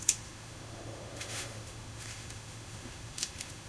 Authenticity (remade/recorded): remade